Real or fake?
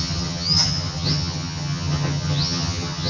fake